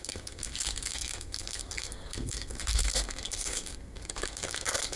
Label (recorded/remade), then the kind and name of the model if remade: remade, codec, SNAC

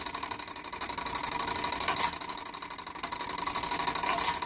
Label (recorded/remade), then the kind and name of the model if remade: recorded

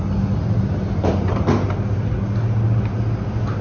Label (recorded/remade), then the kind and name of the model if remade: recorded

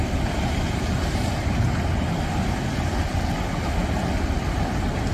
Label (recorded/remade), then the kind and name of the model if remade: recorded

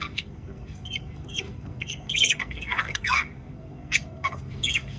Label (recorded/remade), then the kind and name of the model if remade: remade, codec, SNAC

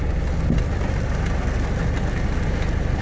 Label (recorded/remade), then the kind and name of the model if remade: recorded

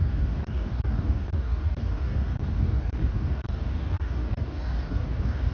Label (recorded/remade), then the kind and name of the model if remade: remade, codec, DAC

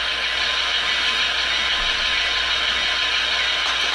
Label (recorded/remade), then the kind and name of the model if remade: recorded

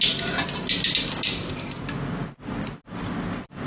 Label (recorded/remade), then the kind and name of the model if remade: recorded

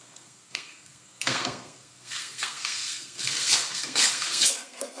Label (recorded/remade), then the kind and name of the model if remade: remade, codec, SNAC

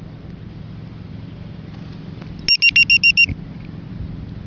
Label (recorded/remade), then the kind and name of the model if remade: recorded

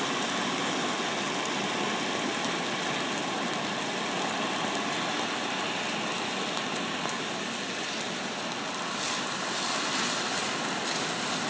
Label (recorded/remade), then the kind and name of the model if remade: recorded